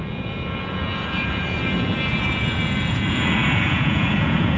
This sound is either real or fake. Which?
fake